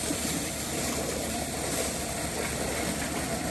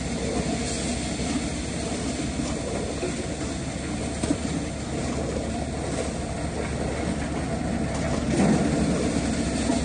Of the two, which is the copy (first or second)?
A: first